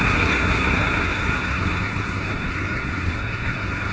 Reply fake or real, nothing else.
fake